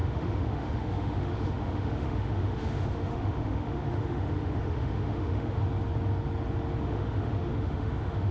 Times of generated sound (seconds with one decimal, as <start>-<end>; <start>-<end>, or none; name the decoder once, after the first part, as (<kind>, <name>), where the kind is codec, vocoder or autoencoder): 0.0-5.6 (autoencoder, DAC-VAE); 6.8-8.3